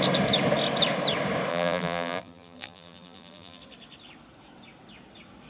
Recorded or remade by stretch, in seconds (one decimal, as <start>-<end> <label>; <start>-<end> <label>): 0.0-1.5 recorded; 1.5-3.6 remade; 3.6-5.5 recorded